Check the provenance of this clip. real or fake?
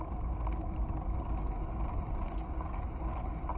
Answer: real